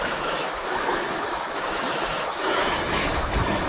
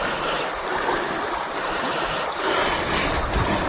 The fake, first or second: first